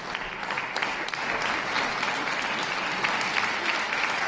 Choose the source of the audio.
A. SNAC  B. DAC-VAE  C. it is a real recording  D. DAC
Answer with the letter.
C